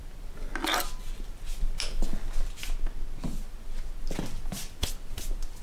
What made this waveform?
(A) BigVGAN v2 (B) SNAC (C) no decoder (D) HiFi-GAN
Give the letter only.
C